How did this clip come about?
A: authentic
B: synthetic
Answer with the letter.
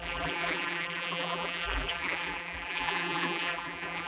B